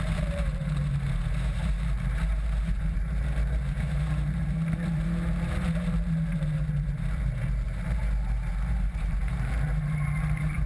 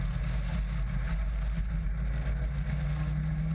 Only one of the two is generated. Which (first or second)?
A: first